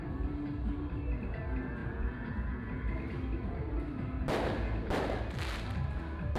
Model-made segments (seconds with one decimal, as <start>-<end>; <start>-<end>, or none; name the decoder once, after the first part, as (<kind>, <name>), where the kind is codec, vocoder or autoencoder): 1.8-2.8 (vocoder, Vocos)